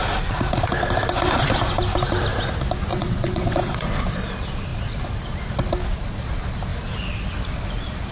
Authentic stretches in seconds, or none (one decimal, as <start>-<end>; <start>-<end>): 0.0-2.9; 4.2-8.1